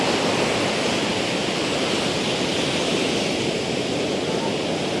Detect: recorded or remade recorded